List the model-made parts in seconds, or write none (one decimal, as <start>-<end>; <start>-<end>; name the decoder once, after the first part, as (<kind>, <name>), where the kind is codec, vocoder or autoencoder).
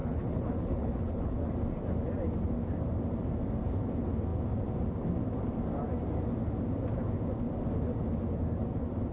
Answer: 0.0-1.5 (codec, HILCodec)